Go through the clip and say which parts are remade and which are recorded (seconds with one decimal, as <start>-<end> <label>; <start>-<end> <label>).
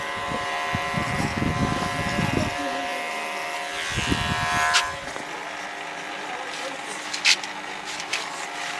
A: 0.0-8.8 recorded